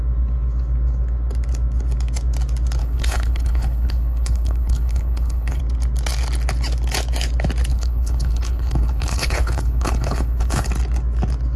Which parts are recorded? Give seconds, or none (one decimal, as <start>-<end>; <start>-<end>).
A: 0.0-2.8; 5.6-7.7; 10.7-11.6